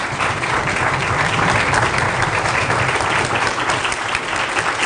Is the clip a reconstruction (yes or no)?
no